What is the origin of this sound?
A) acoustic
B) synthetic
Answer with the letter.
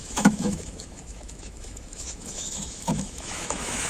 B